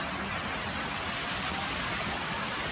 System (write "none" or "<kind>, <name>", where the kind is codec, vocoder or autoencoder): none